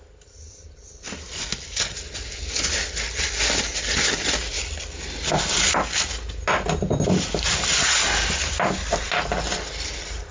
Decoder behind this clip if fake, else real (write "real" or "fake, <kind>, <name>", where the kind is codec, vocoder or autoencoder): real